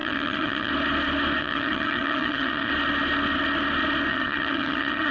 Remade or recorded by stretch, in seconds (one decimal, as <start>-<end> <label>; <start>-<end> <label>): 0.0-0.7 remade; 0.7-1.4 recorded; 1.4-2.7 remade; 2.7-4.1 recorded; 4.1-5.1 remade